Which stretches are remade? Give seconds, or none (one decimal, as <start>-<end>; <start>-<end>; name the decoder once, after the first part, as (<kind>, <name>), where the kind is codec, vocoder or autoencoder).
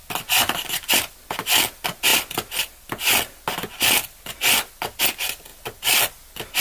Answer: none